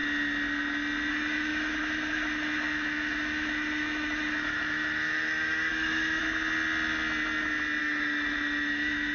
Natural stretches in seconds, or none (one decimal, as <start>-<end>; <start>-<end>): 0.0-1.1; 6.2-7.8